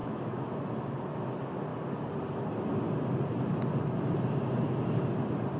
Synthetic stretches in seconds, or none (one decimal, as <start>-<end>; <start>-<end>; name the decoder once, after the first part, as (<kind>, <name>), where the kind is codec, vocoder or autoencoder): 0.0-0.6 (autoencoder, DAC-VAE)